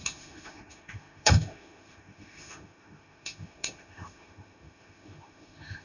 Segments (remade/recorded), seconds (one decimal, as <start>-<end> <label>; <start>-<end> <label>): 0.0-5.8 remade